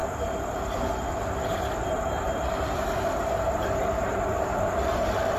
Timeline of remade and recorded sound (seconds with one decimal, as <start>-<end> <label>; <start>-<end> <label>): 0.0-5.4 remade